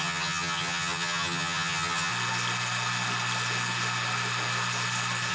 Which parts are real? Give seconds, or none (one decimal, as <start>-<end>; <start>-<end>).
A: 2.1-5.3